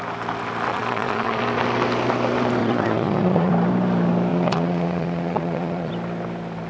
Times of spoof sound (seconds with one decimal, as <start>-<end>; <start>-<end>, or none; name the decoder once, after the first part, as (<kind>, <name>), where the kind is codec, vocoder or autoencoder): 0.7-1.4 (vocoder, Vocos); 2.6-3.5; 4.3-5.9